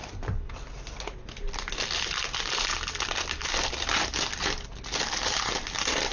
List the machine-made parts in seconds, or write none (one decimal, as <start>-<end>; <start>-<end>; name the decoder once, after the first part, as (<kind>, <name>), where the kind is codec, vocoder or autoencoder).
none